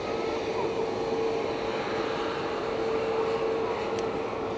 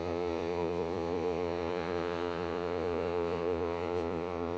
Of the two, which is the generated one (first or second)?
second